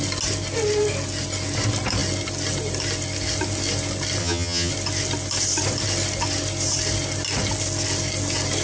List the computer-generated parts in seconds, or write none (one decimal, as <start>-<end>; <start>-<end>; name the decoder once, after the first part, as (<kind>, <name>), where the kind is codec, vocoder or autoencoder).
4.2-4.7 (vocoder, HiFi-GAN)